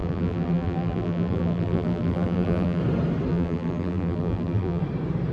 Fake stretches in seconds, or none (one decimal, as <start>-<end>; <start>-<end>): 0.0-2.8; 3.3-4.8